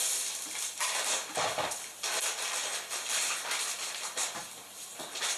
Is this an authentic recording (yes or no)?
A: yes